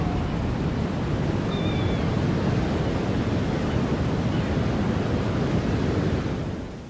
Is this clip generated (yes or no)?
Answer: yes